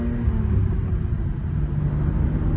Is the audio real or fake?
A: real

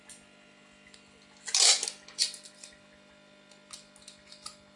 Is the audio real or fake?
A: real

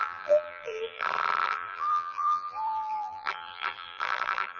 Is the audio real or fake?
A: fake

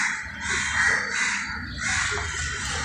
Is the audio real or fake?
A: real